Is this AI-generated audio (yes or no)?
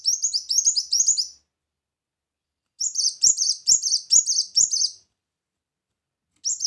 no